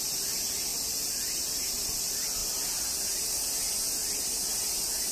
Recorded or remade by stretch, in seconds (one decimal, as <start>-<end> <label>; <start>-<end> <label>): 0.0-5.1 recorded